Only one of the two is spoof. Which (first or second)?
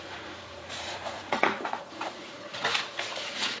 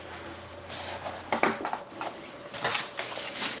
first